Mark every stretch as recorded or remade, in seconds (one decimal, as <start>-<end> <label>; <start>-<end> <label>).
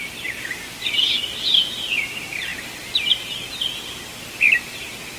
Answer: 0.0-2.0 remade; 2.0-5.2 recorded